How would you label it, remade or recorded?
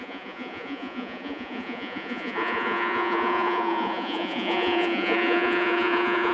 remade